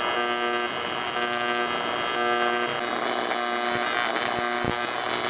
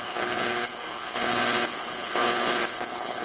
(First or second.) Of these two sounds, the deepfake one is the second